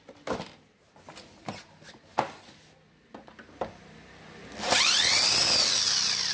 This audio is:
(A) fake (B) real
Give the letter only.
B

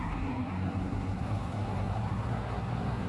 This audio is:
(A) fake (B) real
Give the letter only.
A